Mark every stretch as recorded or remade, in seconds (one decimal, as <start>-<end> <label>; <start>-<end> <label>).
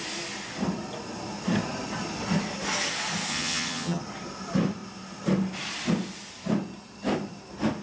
0.0-3.3 recorded; 3.3-4.0 remade; 4.0-7.8 recorded